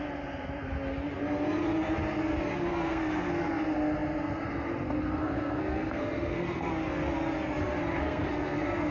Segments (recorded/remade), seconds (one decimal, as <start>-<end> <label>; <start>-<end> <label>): 0.0-2.7 recorded; 2.7-3.5 remade; 3.5-5.2 recorded; 5.2-6.7 remade; 6.7-8.0 recorded; 8.0-8.9 remade